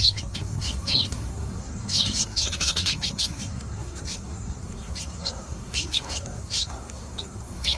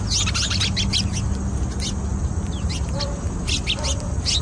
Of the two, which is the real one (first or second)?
second